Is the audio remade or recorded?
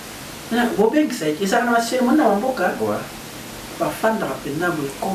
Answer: recorded